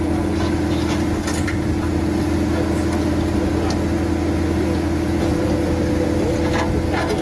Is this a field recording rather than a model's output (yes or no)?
yes